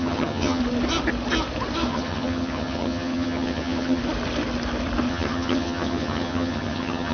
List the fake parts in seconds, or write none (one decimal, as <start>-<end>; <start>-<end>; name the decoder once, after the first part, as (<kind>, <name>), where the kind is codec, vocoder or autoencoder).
0.0-0.6 (vocoder, HiFi-GAN); 1.9-4.0; 5.1-7.1

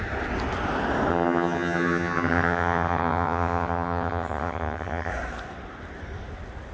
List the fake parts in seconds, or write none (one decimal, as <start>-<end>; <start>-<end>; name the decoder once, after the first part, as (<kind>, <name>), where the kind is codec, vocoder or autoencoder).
1.1-5.1 (vocoder, HiFi-GAN)

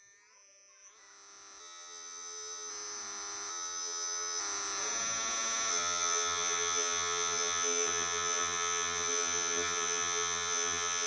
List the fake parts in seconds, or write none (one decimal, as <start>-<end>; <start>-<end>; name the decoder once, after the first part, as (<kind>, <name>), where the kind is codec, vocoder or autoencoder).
1.6-2.7 (vocoder, HiFi-GAN); 3.5-4.4; 5.7-11.1

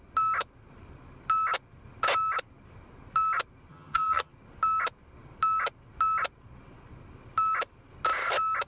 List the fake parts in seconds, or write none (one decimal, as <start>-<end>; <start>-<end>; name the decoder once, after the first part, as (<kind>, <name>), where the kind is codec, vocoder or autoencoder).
3.7-4.3 (vocoder, HiFi-GAN)

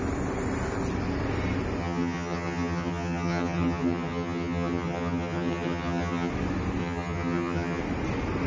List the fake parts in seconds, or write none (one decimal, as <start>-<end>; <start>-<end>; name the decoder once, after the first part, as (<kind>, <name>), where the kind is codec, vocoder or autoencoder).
1.8-6.3 (vocoder, HiFi-GAN); 6.8-7.8

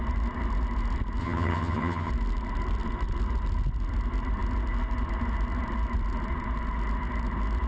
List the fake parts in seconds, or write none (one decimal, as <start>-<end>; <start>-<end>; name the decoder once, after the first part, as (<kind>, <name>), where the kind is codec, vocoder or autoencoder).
1.2-2.1 (vocoder, HiFi-GAN)